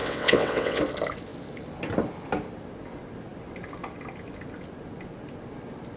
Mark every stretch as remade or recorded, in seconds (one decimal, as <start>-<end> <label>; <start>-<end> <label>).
0.0-0.8 remade; 0.8-6.0 recorded